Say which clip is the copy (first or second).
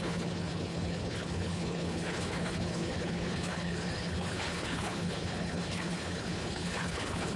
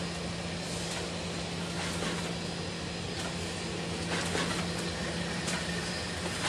first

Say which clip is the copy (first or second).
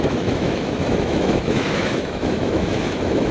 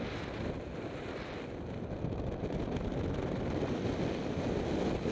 first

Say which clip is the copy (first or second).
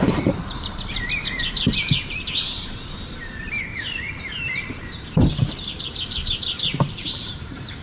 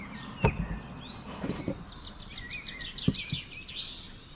first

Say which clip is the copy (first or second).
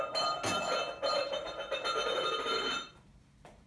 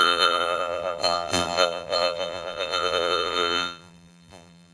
second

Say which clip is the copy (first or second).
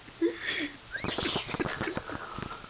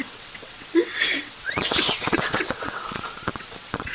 second